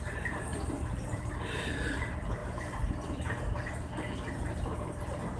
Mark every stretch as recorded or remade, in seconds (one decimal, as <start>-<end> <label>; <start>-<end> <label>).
0.0-5.4 remade